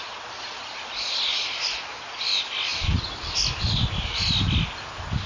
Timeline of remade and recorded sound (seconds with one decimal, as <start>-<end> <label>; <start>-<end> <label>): 0.0-5.3 recorded

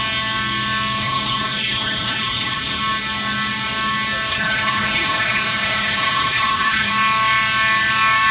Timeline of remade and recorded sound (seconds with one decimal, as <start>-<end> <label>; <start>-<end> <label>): 0.0-1.0 recorded; 1.0-2.8 remade; 2.8-4.3 recorded; 4.3-6.9 remade; 6.9-8.3 recorded

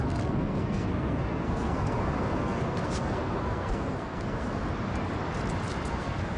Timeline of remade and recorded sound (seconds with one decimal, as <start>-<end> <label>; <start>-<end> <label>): 0.0-4.6 remade; 4.6-5.9 recorded; 5.9-6.4 remade